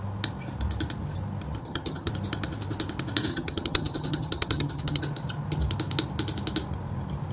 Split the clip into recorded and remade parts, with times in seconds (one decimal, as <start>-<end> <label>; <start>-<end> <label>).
0.0-1.6 recorded; 1.6-2.1 remade; 2.1-3.3 recorded; 3.3-5.0 remade; 5.0-7.3 recorded